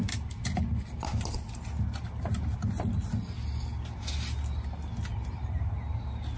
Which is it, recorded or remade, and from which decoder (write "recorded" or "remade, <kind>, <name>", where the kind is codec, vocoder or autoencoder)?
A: recorded